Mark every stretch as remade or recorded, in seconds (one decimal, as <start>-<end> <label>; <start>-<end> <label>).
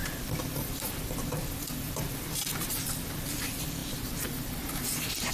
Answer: 0.0-3.8 remade; 3.8-5.3 recorded